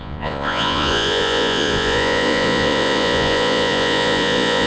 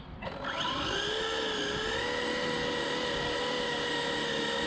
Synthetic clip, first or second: first